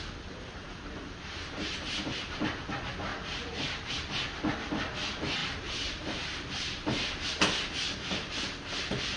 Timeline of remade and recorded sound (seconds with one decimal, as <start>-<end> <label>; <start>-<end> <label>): 0.0-0.6 recorded; 0.6-1.7 remade; 1.7-3.1 recorded; 3.1-3.9 remade; 3.9-5.4 recorded; 5.4-7.3 remade; 7.3-9.2 recorded